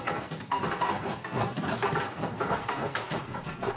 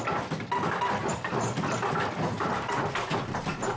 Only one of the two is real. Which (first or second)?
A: second